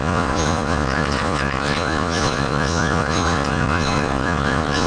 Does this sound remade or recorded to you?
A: remade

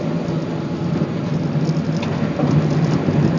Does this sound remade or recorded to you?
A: recorded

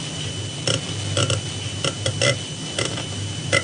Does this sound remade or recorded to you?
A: recorded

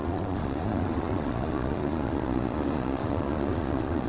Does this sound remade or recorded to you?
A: remade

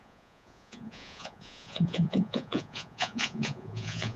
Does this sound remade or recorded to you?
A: remade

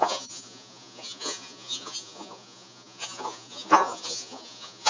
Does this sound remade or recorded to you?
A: remade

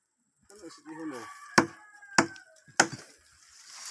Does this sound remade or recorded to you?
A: recorded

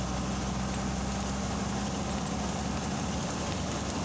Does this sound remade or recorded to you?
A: recorded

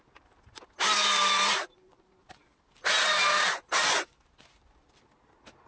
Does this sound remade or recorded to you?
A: recorded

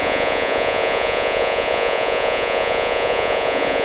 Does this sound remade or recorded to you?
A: remade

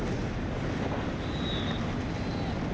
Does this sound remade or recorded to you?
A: recorded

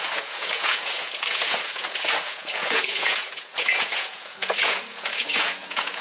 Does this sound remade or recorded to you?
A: remade